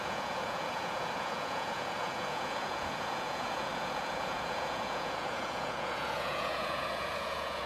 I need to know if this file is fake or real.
fake